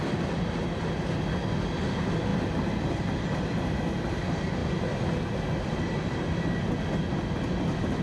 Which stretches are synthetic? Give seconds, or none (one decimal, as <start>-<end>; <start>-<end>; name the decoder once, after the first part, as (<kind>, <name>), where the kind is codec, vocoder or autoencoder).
none